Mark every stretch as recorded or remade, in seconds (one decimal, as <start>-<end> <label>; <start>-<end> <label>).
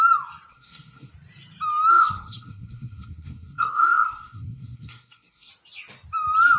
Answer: 0.0-0.5 recorded; 0.5-1.1 remade; 1.1-1.9 recorded; 1.9-5.5 remade; 5.5-6.6 recorded